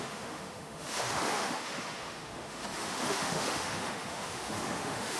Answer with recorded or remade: remade